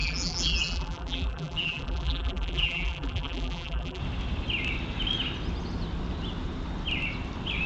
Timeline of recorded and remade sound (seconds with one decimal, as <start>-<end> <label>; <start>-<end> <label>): 0.0-4.0 remade; 4.0-7.7 recorded